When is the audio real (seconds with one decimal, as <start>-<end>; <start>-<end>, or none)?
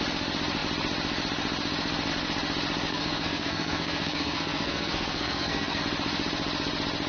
0.0-2.9; 5.8-7.1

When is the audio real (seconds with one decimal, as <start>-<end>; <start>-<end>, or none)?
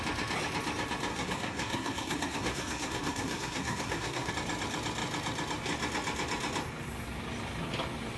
0.0-1.1; 4.3-8.2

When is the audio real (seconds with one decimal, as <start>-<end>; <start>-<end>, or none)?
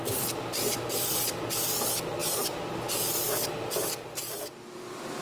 0.0-5.2